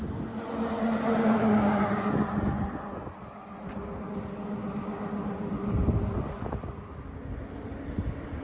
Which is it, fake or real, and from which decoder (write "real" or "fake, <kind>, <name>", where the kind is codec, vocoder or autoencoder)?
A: real